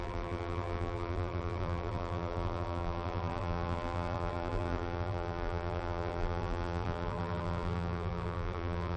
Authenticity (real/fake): fake